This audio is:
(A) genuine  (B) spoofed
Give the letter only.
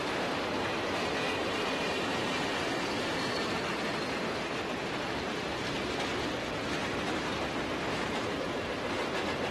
B